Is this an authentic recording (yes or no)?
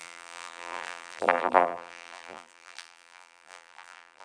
no